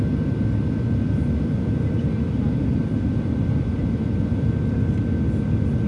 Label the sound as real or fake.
real